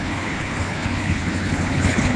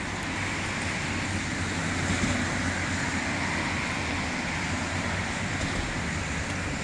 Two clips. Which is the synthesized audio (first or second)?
first